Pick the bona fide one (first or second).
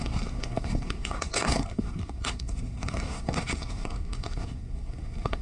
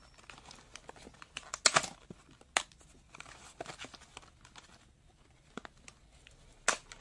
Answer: second